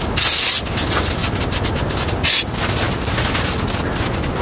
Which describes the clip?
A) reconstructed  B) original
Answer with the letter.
B